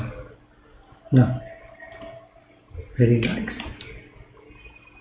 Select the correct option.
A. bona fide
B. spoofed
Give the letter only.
A